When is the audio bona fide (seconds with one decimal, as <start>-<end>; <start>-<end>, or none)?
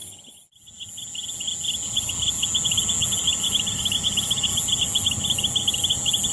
0.0-6.3